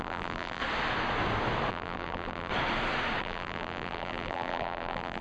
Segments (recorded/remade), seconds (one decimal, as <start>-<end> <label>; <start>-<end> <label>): 0.0-0.6 remade; 0.6-1.7 recorded; 1.7-2.5 remade; 2.5-3.2 recorded; 3.2-5.2 remade